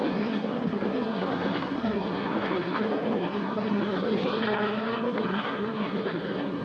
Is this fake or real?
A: fake